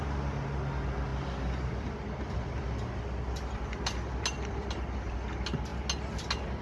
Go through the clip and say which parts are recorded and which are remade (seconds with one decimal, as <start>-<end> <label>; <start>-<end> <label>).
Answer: 0.0-6.6 recorded